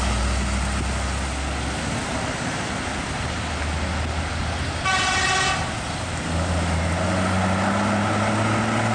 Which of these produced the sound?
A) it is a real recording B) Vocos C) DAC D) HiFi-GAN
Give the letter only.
A